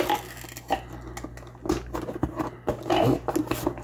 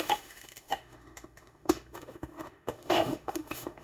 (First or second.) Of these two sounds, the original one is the first